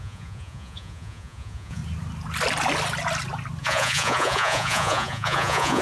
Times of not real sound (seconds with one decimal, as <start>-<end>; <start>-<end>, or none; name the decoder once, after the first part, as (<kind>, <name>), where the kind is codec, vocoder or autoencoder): 0.0-1.8 (vocoder, Vocos); 3.6-5.8